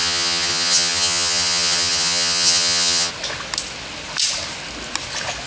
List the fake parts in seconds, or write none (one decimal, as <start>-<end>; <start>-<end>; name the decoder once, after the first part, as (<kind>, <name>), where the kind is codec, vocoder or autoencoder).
0.0-3.1 (vocoder, HiFi-GAN)